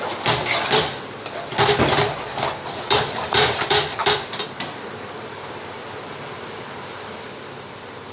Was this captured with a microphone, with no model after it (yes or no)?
no